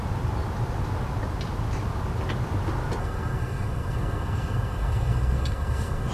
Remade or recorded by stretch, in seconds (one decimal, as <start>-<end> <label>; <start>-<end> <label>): 0.0-3.0 recorded; 3.0-6.1 remade